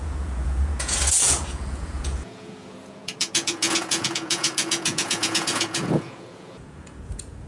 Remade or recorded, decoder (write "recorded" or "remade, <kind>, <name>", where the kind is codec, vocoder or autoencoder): remade, vocoder, Vocos